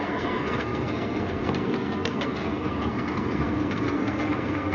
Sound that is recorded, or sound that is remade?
remade